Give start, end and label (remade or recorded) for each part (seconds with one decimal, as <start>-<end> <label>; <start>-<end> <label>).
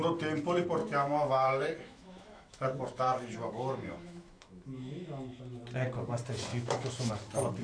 0.0-0.8 recorded; 0.8-5.4 remade; 5.4-6.5 recorded; 6.5-7.1 remade; 7.1-7.6 recorded